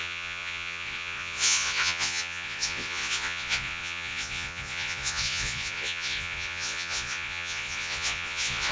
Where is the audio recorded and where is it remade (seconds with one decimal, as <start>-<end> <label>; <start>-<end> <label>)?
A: 0.0-8.7 remade